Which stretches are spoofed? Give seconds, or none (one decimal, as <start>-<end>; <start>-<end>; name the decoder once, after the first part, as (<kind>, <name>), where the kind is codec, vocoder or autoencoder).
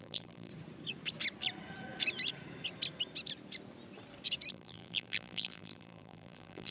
0.0-0.5 (vocoder, BigVGAN v2); 4.5-6.7